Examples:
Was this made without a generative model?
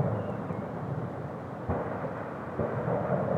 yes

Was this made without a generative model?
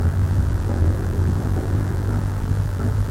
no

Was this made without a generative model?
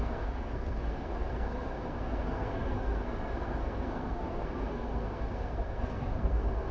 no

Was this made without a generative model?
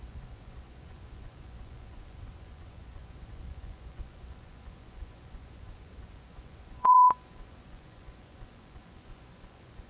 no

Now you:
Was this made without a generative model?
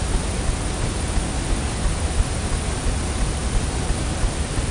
yes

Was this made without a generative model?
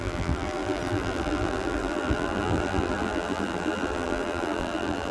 no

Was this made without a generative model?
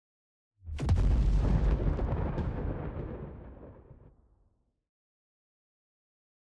yes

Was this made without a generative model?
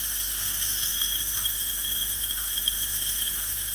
no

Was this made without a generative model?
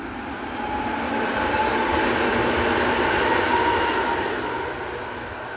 yes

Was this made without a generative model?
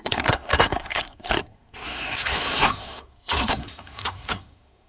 no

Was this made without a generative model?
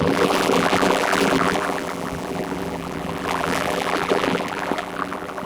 no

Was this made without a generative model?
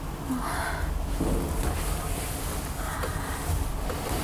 yes